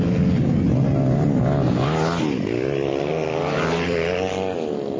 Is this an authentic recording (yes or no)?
yes